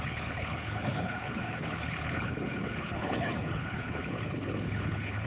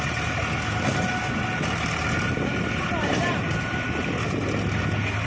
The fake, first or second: first